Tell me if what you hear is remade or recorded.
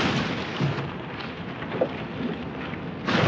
recorded